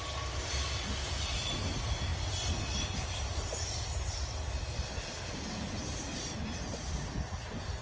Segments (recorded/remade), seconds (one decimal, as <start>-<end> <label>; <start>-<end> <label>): 0.0-7.8 recorded